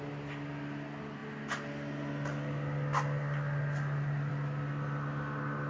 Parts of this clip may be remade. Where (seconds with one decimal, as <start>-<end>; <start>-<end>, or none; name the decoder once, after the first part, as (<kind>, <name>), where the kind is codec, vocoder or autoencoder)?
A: none